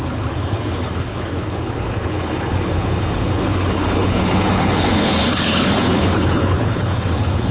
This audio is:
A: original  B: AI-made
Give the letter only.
B